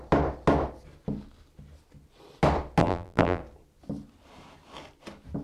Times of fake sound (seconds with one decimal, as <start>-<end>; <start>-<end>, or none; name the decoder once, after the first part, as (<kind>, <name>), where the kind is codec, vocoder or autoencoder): 2.8-3.4 (vocoder, BigVGAN v2)